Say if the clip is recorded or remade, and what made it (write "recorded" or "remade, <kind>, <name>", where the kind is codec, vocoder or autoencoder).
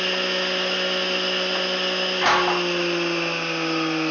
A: recorded